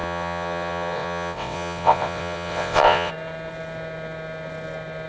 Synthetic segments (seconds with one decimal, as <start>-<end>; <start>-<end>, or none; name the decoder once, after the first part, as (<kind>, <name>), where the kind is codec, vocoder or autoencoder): 0.0-3.1 (vocoder, WaveNeXt)